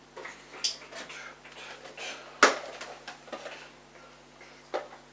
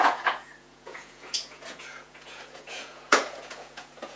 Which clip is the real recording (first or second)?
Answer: first